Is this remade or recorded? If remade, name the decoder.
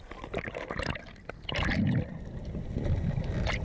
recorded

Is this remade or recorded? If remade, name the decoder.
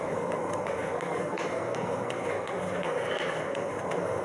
remade, codec, SNAC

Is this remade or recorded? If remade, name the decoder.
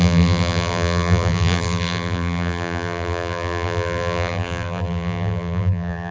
remade, vocoder, BigVGAN v2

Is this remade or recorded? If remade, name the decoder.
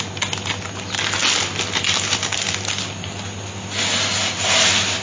recorded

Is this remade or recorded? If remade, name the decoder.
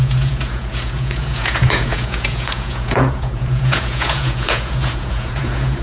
remade, vocoder, Vocos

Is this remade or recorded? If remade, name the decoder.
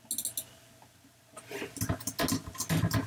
recorded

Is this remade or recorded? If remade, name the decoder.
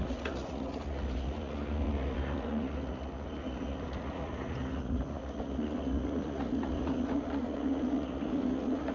remade, vocoder, Vocos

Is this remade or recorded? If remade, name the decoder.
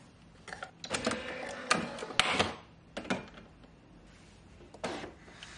recorded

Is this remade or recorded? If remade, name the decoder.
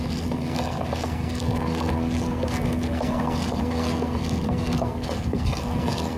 remade, codec, SNAC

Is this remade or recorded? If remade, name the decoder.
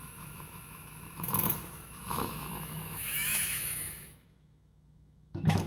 remade, autoencoder, DAC-VAE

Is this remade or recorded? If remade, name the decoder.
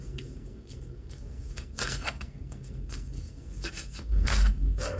remade, codec, SNAC